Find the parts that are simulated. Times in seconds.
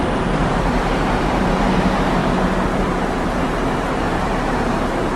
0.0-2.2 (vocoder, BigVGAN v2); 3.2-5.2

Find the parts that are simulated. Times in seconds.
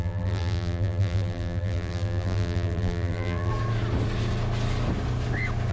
0.0-3.5 (vocoder, BigVGAN v2)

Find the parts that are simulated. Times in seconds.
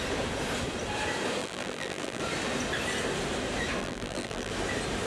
1.4-2.2 (vocoder, BigVGAN v2); 3.8-4.5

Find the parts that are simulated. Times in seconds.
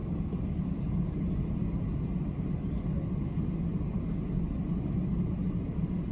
0.0-1.5 (vocoder, BigVGAN v2)